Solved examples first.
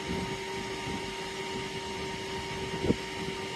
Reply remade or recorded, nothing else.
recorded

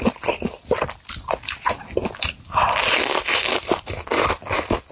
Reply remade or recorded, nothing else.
recorded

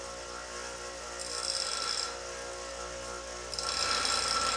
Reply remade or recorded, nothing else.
recorded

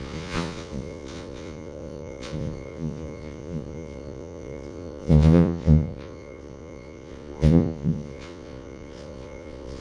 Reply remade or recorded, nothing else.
remade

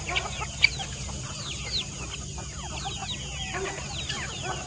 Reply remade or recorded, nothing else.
recorded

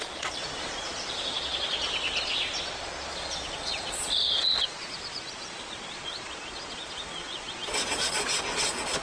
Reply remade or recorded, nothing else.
remade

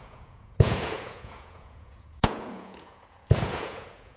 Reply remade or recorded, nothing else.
remade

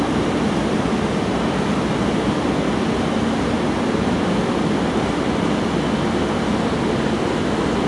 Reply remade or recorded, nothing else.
recorded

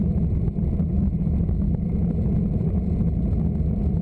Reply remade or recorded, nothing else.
recorded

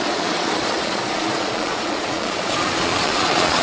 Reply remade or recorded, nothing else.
remade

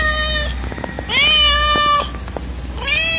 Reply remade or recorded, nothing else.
recorded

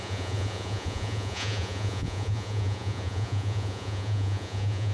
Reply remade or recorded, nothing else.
remade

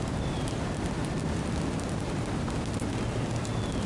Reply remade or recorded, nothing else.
recorded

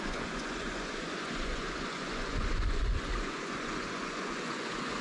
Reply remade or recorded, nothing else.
remade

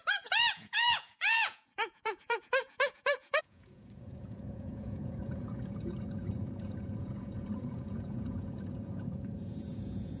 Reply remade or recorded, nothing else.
remade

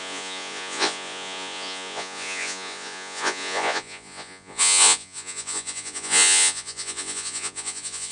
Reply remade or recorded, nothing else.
remade